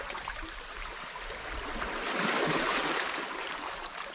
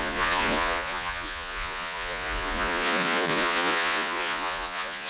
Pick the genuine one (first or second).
first